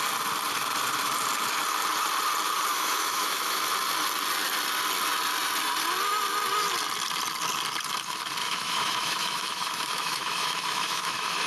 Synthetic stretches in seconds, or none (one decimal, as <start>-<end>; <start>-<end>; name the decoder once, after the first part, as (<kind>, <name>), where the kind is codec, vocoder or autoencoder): 2.7-3.6 (autoencoder, DAC-VAE); 8.4-11.5